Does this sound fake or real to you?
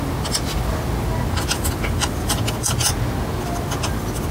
real